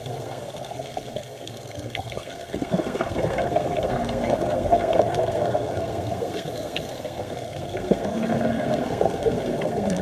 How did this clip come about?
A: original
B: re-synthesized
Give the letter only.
B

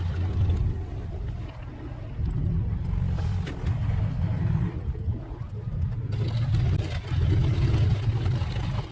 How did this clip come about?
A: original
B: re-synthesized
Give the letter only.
A